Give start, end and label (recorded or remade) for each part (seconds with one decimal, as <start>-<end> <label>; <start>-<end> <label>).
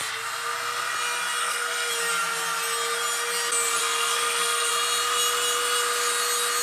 0.0-1.4 recorded; 1.4-1.9 remade; 1.9-3.8 recorded; 3.8-4.7 remade; 4.7-6.6 recorded